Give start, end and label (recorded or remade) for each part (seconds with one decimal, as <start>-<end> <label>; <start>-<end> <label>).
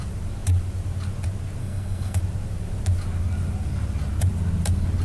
0.0-1.6 recorded; 1.6-2.2 remade; 2.2-5.0 recorded